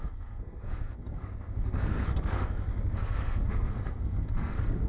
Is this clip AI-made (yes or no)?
yes